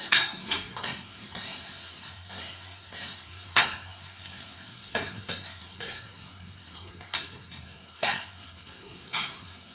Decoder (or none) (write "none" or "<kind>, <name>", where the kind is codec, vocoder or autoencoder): codec, SNAC